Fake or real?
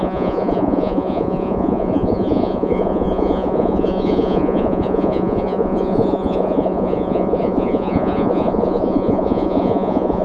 fake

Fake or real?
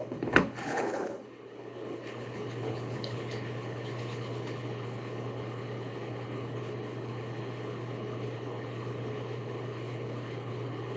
fake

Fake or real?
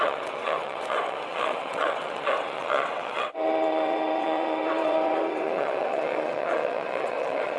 fake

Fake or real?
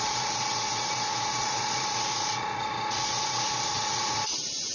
fake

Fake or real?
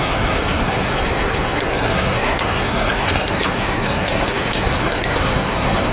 fake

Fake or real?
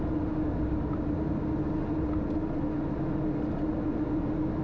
real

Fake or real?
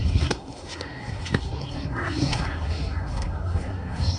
fake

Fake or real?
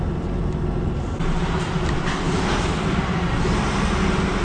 real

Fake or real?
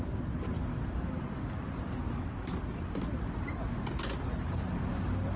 real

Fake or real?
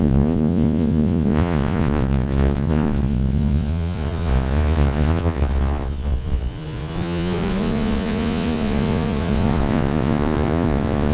fake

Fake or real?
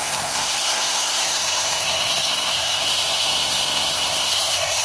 fake